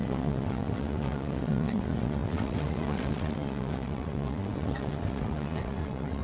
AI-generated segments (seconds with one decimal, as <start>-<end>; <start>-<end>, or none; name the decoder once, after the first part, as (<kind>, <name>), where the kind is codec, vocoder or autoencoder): 0.0-6.2 (vocoder, WaveNeXt)